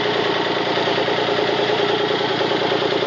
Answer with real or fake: fake